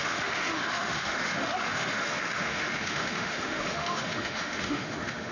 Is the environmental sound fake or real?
fake